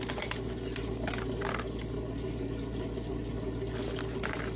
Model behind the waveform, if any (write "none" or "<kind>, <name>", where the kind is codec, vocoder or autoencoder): none